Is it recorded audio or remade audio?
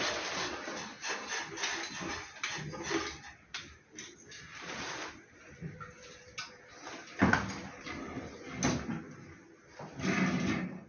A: recorded